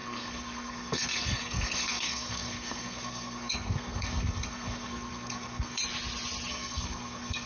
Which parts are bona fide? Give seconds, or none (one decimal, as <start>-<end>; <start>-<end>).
5.8-6.5